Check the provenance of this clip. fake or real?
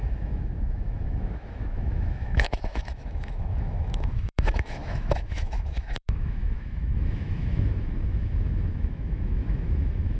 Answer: fake